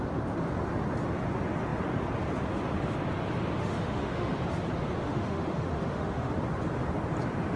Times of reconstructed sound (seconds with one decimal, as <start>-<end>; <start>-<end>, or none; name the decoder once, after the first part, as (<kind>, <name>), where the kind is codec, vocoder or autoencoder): 3.6-4.4 (autoencoder, DAC-VAE); 5.0-6.3